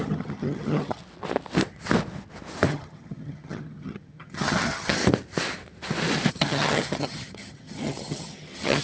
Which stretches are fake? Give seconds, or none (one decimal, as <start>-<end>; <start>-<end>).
0.0-1.0; 2.7-5.0; 6.3-8.8